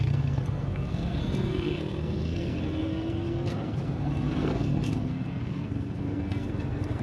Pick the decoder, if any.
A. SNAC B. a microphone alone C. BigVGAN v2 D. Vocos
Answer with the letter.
A